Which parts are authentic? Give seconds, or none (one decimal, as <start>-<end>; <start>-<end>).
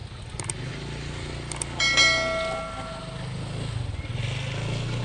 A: 0.0-5.0